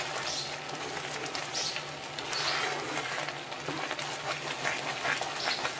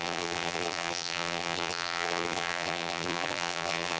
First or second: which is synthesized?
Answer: second